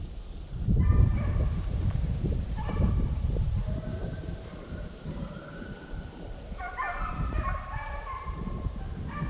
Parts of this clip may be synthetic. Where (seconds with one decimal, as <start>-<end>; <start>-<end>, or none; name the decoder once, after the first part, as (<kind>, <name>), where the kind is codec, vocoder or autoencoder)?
1.1-3.5 (vocoder, BigVGAN v2); 3.9-8.8